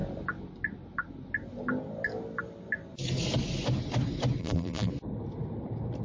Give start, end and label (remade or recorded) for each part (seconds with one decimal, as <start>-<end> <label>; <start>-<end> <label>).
0.0-4.4 recorded; 4.4-4.9 remade; 4.9-6.0 recorded